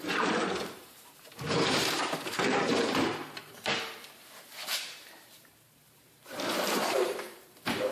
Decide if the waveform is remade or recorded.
remade